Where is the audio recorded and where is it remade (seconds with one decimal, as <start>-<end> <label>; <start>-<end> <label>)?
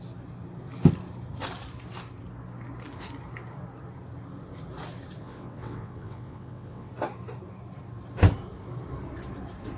0.0-5.2 recorded; 5.2-6.9 remade; 6.9-9.8 recorded